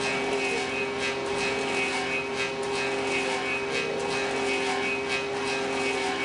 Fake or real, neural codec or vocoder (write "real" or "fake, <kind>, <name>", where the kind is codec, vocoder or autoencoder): real